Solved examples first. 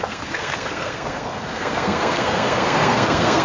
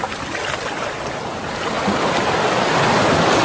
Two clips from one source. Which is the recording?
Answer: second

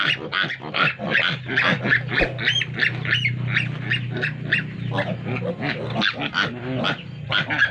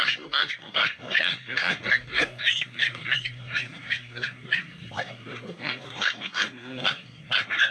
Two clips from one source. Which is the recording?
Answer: first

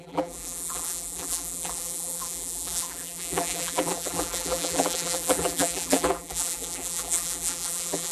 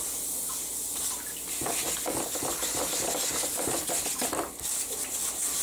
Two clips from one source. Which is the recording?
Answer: second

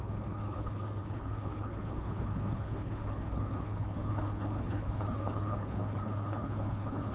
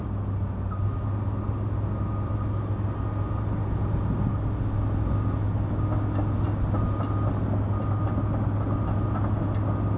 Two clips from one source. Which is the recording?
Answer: second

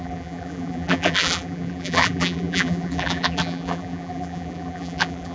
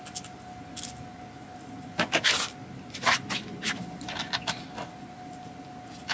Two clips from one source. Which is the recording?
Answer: second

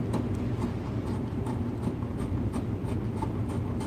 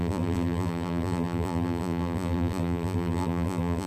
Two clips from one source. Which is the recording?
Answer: first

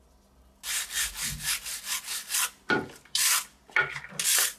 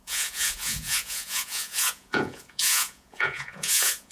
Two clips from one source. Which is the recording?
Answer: first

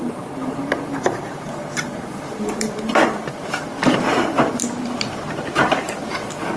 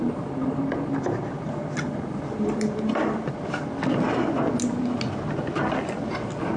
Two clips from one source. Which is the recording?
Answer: second